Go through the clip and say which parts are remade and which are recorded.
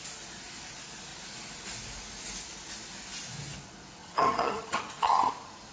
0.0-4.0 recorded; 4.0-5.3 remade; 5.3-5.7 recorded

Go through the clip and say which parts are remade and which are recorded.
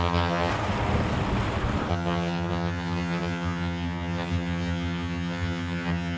0.0-0.5 remade; 0.5-1.9 recorded; 1.9-6.2 remade